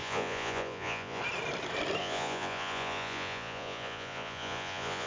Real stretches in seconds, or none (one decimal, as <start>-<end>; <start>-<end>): 1.2-2.0